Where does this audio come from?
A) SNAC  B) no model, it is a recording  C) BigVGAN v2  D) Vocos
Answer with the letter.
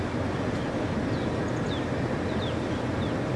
B